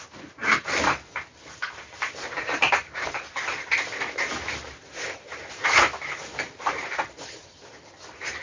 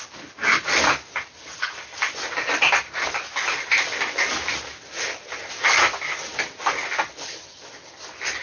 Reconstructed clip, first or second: first